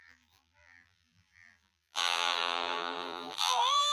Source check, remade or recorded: remade